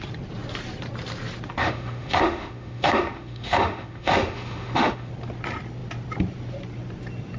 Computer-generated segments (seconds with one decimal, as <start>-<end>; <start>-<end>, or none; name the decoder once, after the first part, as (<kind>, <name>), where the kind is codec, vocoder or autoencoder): 1.6-5.1 (autoencoder, DAC-VAE)